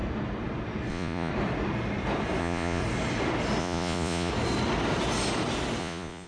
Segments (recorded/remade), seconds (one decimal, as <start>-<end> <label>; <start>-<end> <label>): 0.0-0.9 recorded; 0.9-1.3 remade; 1.3-2.4 recorded; 2.4-2.8 remade; 2.8-3.6 recorded; 3.6-4.3 remade; 4.3-5.8 recorded; 5.8-6.3 remade